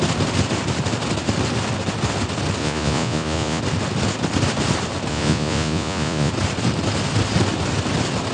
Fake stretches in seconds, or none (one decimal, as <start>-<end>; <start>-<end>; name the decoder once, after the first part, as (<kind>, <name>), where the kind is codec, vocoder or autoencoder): 2.6-3.6 (vocoder, Vocos); 5.1-6.3